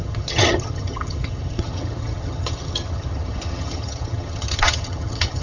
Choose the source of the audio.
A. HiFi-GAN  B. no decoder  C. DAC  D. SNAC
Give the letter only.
A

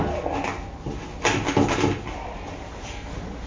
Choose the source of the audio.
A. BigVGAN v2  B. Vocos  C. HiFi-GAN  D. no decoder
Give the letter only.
D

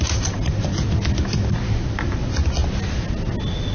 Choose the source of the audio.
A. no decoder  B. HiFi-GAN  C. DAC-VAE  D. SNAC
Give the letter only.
A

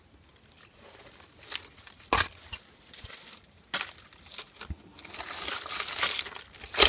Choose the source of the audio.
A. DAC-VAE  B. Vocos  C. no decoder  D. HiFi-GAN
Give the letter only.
C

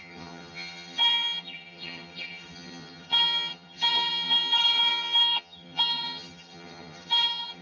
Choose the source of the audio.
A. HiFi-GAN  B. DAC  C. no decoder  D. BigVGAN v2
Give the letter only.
A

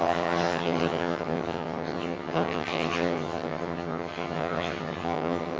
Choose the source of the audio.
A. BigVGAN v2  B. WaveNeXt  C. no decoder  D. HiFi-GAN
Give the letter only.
D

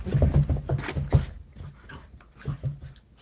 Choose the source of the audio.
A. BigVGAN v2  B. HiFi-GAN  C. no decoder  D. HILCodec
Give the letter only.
C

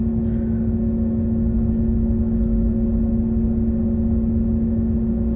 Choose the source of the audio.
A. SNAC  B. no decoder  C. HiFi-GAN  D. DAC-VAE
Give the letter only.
B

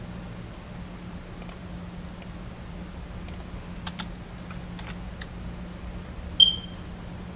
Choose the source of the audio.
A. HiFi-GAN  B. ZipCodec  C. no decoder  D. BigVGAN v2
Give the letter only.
C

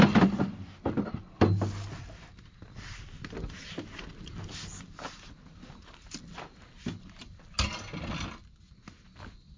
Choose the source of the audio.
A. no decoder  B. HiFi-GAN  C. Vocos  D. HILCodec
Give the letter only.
A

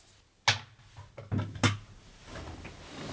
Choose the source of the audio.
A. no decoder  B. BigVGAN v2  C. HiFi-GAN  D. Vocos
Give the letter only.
A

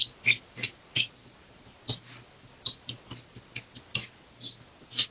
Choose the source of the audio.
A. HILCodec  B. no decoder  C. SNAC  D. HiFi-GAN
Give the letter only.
B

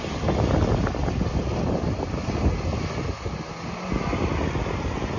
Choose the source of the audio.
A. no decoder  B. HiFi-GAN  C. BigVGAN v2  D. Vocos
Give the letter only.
A